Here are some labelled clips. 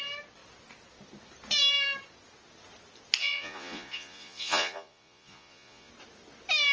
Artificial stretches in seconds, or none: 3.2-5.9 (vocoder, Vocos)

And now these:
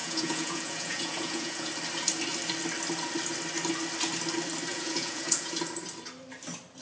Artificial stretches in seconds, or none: 0.0-1.7 (vocoder, Vocos); 4.7-5.6

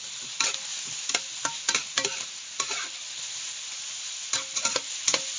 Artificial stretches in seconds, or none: none

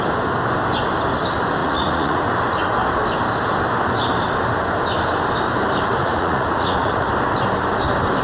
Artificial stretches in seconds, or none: 1.6-2.3 (vocoder, Vocos); 6.0-7.1

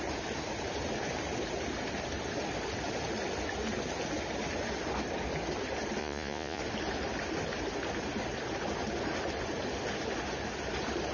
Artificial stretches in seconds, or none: 6.0-6.6 (vocoder, Vocos)

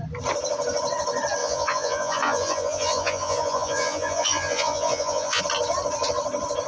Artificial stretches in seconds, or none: 1.4-5.4 (vocoder, Vocos)